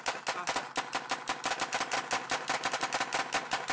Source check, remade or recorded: recorded